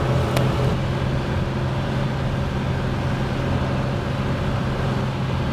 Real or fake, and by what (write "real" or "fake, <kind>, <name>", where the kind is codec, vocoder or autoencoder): real